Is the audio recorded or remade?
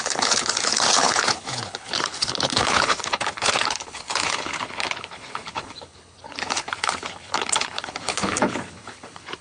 remade